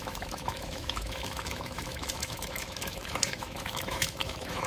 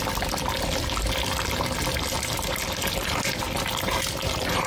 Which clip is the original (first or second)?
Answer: second